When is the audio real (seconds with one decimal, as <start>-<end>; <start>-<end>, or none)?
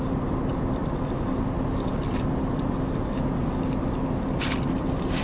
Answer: 0.0-5.2